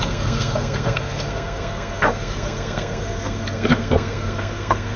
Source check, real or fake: fake